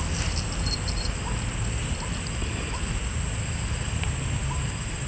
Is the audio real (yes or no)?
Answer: yes